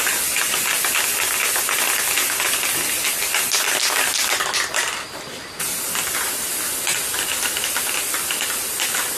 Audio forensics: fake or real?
real